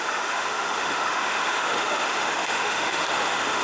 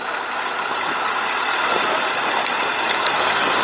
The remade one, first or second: first